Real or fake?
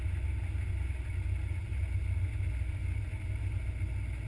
real